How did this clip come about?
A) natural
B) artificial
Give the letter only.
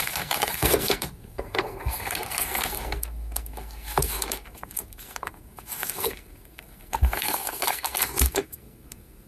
B